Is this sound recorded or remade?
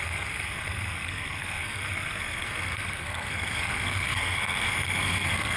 remade